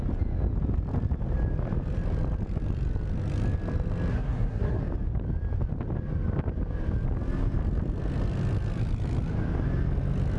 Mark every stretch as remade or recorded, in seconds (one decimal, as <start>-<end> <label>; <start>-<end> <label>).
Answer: 0.0-4.1 recorded; 4.1-4.8 remade; 4.8-10.4 recorded

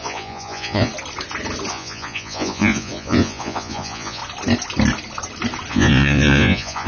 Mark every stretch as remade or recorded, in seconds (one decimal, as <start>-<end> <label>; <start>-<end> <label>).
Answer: 0.0-0.9 remade; 0.9-1.7 recorded; 1.7-4.2 remade; 4.2-5.7 recorded; 5.7-6.9 remade